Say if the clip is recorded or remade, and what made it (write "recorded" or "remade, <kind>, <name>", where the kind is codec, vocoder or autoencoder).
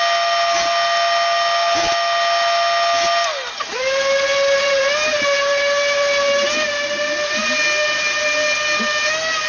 recorded